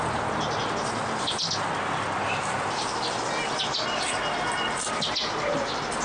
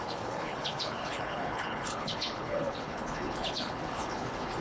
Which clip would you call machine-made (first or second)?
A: second